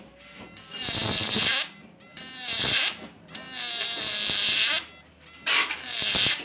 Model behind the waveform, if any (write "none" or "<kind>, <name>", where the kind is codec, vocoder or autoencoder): none